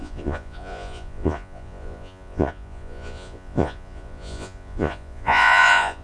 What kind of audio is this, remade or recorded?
remade